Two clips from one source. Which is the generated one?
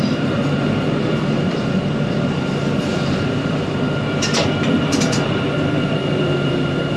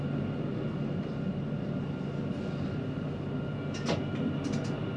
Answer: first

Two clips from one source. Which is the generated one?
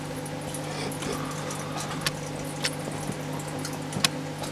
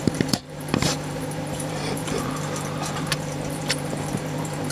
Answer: second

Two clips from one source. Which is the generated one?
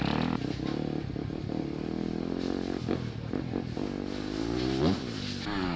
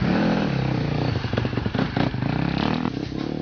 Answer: second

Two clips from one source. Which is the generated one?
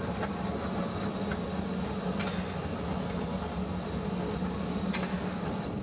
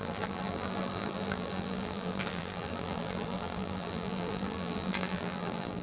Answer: second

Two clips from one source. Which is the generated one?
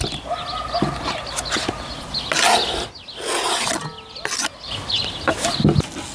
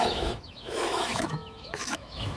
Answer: second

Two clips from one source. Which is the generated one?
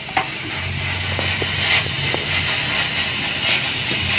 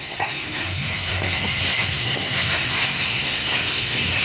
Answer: second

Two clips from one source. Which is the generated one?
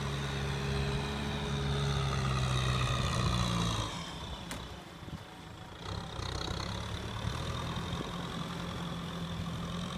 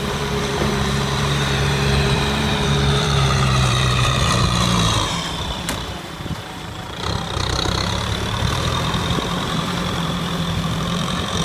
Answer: second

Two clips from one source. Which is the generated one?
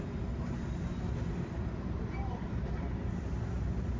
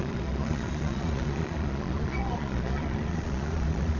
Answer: second